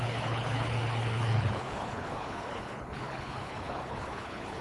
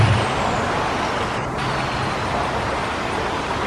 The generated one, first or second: first